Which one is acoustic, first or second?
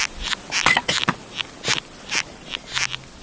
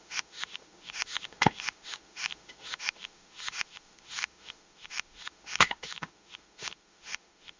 first